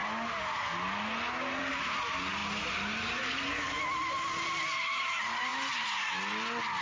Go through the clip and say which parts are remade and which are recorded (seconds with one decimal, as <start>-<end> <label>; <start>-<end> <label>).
0.0-6.8 recorded